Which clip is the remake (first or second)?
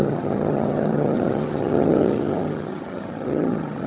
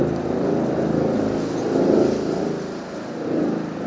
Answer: first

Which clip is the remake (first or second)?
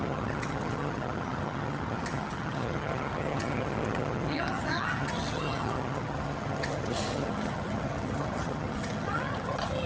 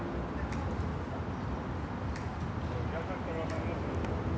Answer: first